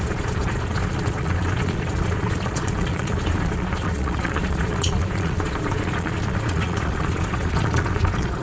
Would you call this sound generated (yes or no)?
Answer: yes